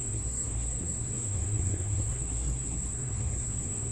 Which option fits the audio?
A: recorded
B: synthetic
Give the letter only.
B